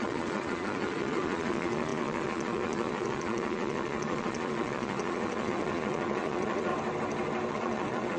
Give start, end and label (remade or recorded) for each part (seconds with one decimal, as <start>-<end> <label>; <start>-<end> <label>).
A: 0.0-6.7 remade; 6.7-7.5 recorded; 7.5-8.2 remade